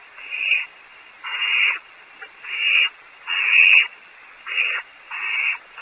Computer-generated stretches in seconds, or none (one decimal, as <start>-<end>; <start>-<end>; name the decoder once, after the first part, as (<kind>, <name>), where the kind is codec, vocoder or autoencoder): 0.0-5.8 (vocoder, Vocos)